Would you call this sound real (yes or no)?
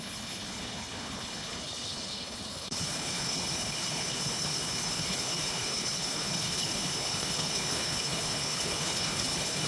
no